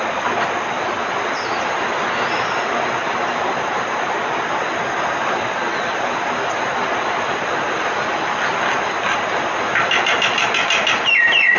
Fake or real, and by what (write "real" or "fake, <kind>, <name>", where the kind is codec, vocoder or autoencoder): real